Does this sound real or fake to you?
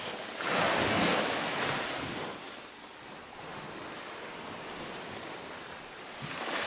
real